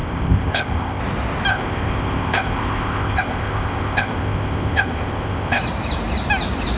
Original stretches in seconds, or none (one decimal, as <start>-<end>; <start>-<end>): 1.0-1.5; 5.6-6.8